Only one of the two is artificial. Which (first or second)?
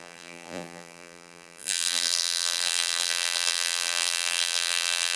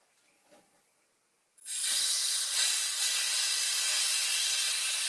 first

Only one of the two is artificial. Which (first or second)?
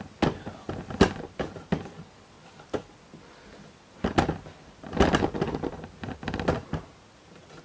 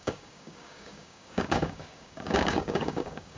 second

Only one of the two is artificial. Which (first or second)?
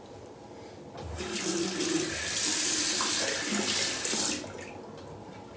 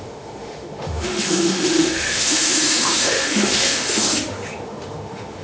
second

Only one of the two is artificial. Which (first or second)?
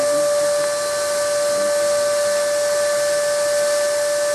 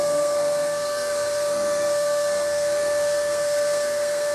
second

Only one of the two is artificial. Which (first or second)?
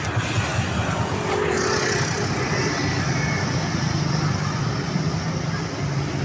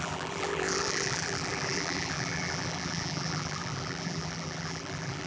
second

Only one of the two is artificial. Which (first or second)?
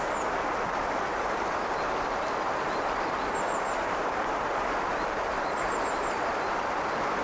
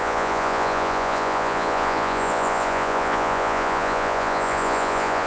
second